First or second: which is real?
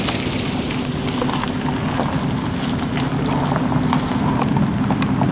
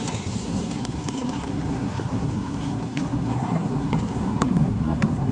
first